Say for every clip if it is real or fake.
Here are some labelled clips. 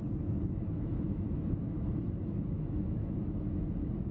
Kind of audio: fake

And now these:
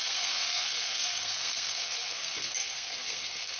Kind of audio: fake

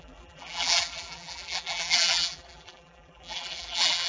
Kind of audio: fake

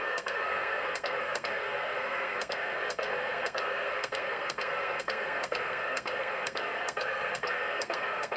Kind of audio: fake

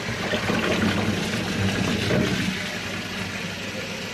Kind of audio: real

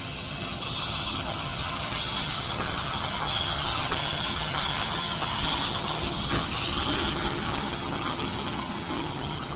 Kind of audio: fake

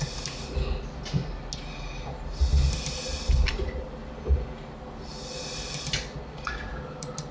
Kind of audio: real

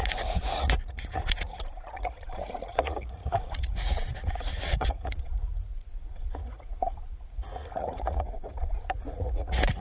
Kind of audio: fake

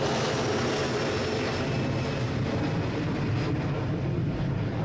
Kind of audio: real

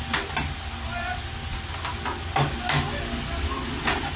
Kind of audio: real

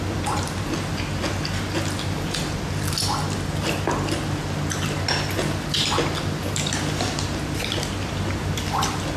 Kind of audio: real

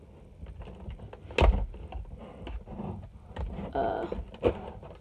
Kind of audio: real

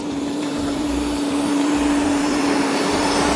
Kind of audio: fake